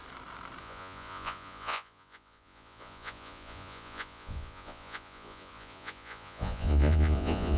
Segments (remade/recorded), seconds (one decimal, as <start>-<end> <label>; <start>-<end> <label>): 0.0-0.6 recorded; 0.6-7.6 remade